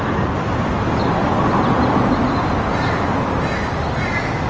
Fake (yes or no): no